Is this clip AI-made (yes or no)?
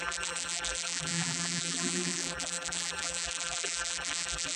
yes